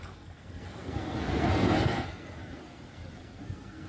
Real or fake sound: fake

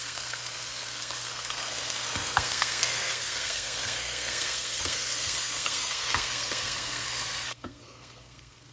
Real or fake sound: fake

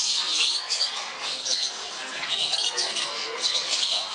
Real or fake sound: fake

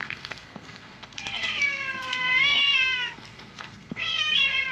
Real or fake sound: fake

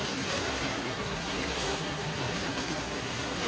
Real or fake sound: fake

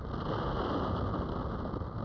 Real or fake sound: real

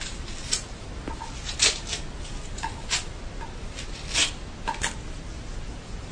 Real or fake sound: real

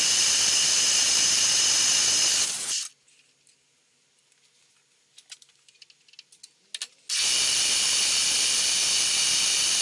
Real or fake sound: real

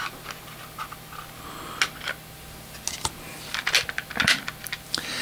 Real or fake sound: real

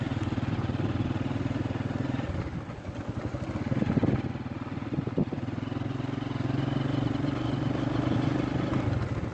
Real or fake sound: real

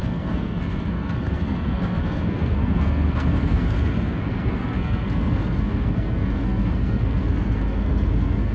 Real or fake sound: fake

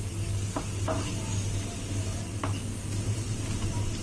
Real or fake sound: real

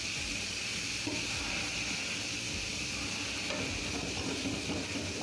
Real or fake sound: real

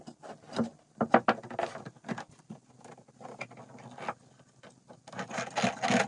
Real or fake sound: real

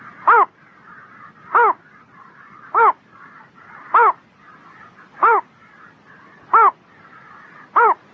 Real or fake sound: real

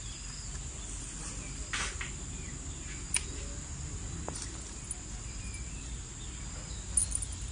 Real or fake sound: real